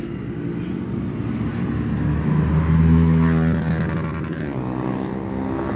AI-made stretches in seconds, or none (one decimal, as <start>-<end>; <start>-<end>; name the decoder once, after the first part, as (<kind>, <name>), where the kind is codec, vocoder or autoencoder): none